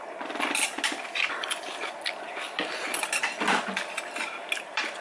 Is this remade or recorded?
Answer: recorded